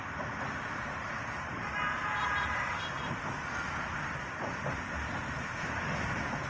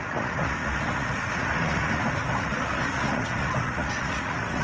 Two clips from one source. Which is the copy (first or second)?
second